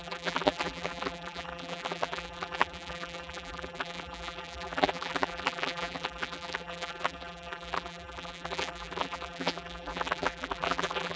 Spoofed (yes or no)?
yes